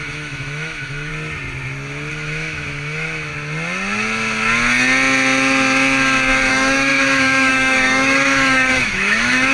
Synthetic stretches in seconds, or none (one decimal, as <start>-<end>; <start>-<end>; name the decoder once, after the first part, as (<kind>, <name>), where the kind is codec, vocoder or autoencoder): 0.0-1.1 (autoencoder, DAC-VAE); 2.1-3.3; 6.5-9.5